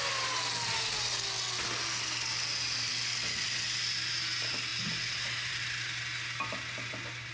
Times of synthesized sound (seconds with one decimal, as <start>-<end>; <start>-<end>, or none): none